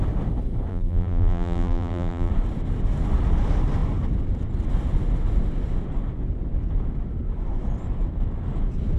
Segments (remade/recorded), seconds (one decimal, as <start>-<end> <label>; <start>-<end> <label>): 0.0-0.7 recorded; 0.7-2.3 remade; 2.3-9.0 recorded